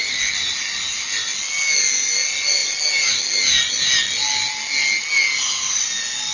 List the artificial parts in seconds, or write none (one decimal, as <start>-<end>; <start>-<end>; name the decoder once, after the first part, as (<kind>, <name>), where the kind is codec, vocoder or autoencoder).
none